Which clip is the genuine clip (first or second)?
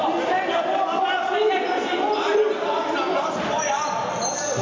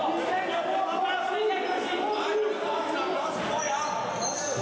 second